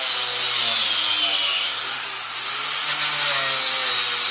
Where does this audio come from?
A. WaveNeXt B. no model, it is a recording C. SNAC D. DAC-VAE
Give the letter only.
B